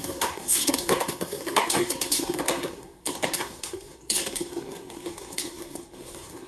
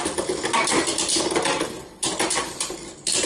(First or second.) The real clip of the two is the second